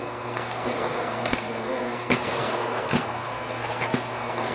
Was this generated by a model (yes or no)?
yes